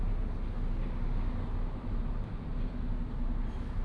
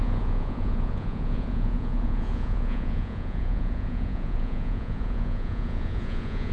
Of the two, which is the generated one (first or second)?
second